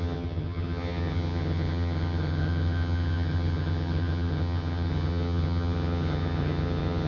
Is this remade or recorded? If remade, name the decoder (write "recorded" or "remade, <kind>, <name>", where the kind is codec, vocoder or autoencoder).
remade, vocoder, HiFi-GAN